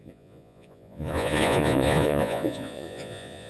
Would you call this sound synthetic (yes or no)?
yes